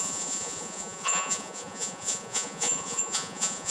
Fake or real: fake